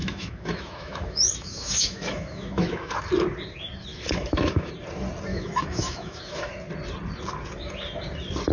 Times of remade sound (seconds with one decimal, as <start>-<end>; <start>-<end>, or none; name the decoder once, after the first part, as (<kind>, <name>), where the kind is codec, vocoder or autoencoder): 0.0-2.9 (autoencoder, DAC-VAE); 3.9-4.7; 5.3-6.5